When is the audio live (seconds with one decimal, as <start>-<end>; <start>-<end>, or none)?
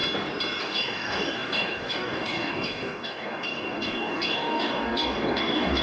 0.0-0.6